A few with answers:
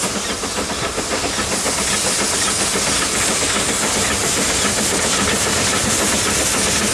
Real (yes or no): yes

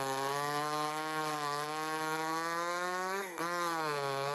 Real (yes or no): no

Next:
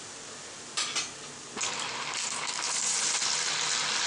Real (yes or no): yes